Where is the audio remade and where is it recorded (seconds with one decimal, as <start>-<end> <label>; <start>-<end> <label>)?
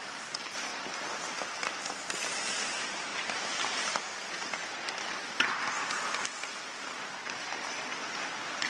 0.0-3.1 recorded; 3.1-4.0 remade; 4.0-8.7 recorded